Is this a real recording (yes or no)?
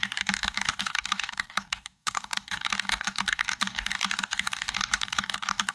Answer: no